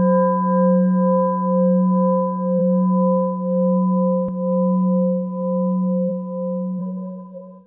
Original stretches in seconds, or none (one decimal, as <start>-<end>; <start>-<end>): 0.0-6.8